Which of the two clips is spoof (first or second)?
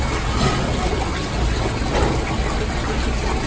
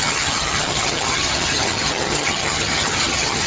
second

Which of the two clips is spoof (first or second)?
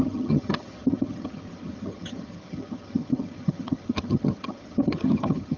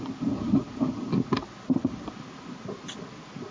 first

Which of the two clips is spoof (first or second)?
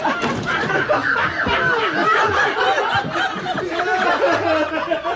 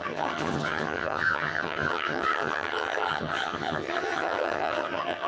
second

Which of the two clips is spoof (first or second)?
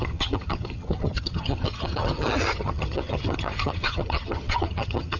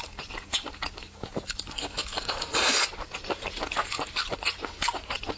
first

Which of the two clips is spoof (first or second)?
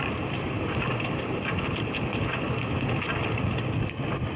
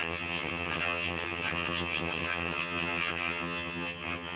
second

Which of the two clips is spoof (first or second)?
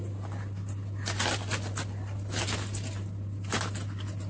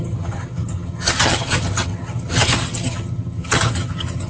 second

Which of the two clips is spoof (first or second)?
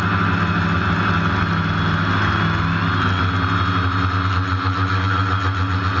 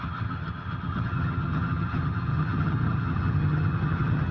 second